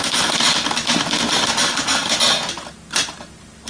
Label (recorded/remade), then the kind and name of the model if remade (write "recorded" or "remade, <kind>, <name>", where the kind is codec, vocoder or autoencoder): recorded